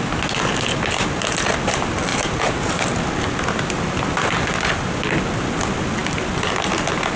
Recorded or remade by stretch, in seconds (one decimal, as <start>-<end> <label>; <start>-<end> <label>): 0.0-2.1 recorded; 2.1-2.9 remade; 2.9-7.2 recorded